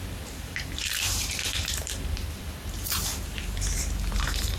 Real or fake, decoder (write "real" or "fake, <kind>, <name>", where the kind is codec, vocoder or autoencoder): fake, vocoder, BigVGAN v2